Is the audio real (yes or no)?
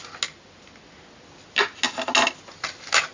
yes